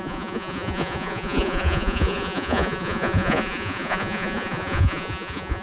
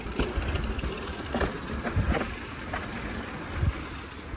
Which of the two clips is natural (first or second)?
second